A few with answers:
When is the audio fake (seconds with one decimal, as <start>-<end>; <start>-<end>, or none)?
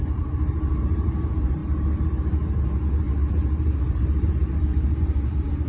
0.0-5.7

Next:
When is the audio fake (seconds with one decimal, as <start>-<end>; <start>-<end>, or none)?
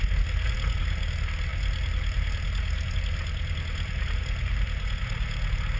none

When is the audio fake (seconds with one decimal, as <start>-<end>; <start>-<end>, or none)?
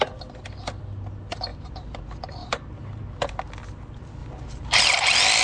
1.5-2.0; 2.4-3.0; 4.2-4.8